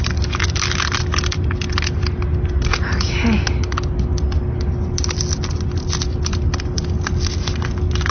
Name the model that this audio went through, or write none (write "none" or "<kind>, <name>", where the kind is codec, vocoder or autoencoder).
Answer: none